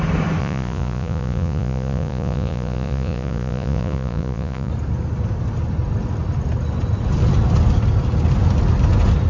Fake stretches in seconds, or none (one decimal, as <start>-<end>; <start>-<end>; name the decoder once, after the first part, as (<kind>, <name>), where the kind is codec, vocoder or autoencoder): 0.4-4.7 (vocoder, Vocos)